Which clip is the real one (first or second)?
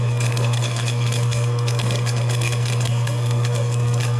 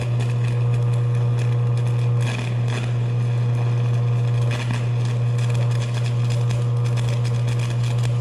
second